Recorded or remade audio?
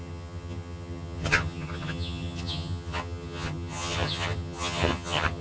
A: remade